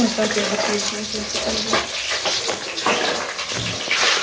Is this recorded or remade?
recorded